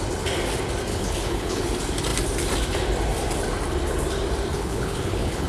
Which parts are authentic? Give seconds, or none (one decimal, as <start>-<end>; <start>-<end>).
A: 0.0-0.9; 1.6-4.5